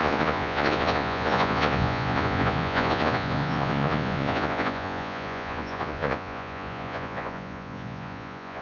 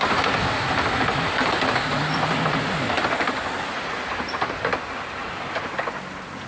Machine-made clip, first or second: first